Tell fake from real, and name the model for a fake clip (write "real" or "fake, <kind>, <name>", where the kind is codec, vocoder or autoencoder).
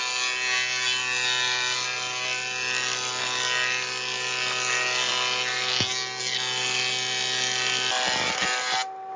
real